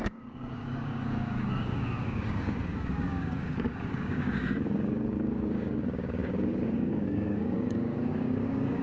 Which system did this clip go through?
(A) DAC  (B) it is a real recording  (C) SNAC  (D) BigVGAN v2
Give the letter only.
A